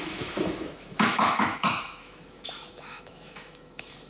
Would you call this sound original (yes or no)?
no